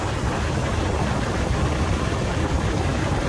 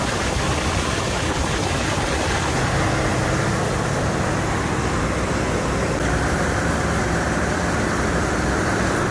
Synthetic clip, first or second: second